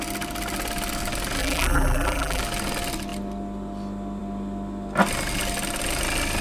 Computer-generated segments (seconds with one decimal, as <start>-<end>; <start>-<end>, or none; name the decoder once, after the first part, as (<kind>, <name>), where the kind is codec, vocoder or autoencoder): 1.4-2.4 (vocoder, BigVGAN v2)